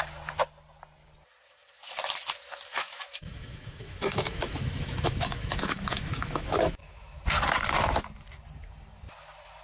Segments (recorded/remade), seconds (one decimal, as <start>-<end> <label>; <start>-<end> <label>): 0.0-2.7 recorded; 2.7-7.2 remade; 7.2-9.6 recorded